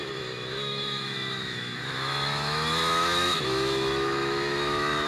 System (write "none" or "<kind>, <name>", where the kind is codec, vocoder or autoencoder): autoencoder, DAC-VAE